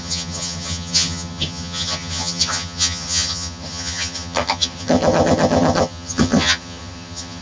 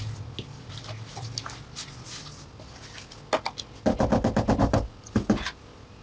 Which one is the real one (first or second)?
second